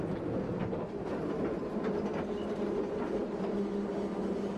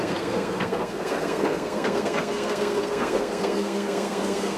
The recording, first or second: first